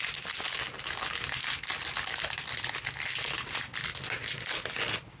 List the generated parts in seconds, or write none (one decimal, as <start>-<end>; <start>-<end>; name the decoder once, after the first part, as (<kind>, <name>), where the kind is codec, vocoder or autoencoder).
none

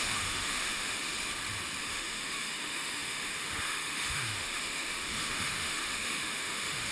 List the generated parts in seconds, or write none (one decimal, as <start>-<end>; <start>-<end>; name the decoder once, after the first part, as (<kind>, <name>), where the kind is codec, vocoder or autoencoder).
0.0-1.1 (autoencoder, DAC-VAE); 1.8-6.9

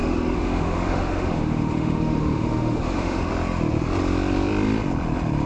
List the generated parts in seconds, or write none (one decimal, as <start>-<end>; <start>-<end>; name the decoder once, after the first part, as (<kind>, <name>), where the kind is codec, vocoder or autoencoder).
0.0-3.3 (autoencoder, DAC-VAE)